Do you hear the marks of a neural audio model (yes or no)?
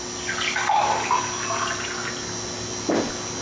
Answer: no